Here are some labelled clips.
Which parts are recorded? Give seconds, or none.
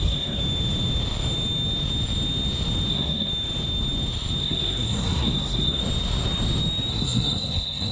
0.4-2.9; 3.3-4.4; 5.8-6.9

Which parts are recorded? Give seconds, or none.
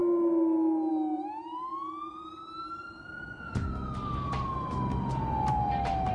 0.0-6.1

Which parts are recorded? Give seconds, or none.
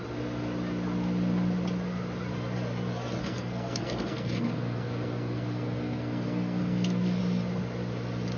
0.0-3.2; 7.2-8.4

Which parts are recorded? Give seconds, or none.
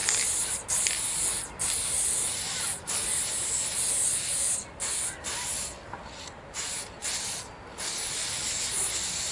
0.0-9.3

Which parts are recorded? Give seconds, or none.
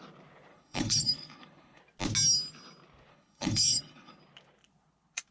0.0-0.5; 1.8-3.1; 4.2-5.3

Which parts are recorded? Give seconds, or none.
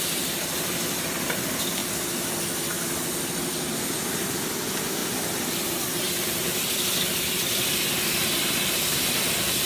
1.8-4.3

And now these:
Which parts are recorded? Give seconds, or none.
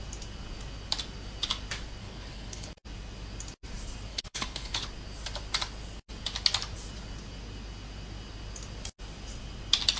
0.0-2.0; 2.7-4.1; 4.9-10.0